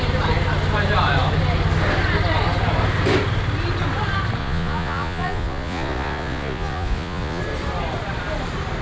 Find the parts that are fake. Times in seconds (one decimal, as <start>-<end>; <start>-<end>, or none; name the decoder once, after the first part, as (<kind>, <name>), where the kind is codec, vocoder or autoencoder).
4.4-7.4 (vocoder, Vocos)